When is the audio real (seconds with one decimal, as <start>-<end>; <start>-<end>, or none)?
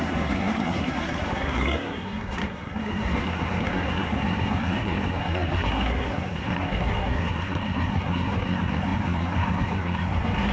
none